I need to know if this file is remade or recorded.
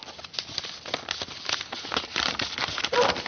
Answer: recorded